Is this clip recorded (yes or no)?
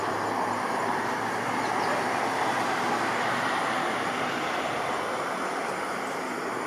yes